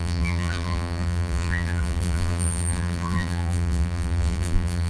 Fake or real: fake